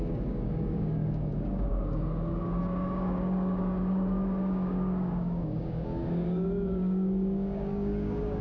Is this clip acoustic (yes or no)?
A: no